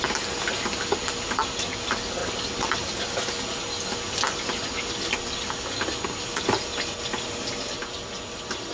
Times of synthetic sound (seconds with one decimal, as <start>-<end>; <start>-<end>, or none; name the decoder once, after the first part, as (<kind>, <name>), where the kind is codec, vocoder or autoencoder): none